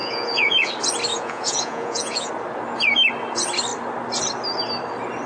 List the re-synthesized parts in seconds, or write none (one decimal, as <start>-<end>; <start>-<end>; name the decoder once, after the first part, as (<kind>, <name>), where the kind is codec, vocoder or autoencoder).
0.0-0.7 (vocoder, Vocos); 1.1-2.3